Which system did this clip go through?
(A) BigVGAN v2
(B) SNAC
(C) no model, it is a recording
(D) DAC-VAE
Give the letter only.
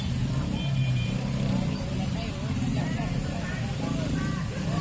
C